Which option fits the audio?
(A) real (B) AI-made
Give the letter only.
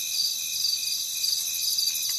A